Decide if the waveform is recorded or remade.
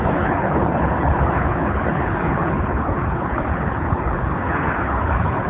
remade